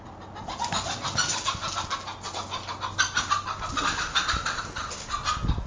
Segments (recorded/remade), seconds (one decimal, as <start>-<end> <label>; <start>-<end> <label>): 0.0-5.7 recorded